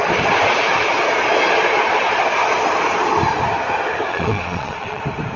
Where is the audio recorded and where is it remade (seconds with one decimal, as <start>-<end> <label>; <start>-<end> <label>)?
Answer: 0.0-4.1 recorded; 4.1-5.0 remade; 5.0-5.4 recorded